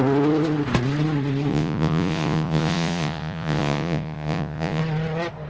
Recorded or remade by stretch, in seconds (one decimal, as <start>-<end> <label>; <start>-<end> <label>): 0.0-1.5 recorded; 1.5-4.8 remade; 4.8-5.5 recorded

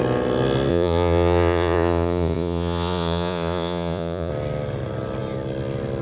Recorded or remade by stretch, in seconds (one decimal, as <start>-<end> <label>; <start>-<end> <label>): 0.0-0.7 recorded; 0.7-4.3 remade; 4.3-6.0 recorded